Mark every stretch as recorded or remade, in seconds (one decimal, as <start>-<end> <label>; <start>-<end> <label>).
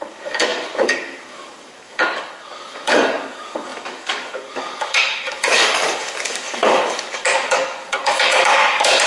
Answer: 0.0-9.1 remade